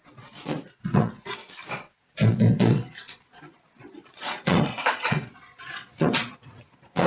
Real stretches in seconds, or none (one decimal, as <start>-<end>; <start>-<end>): none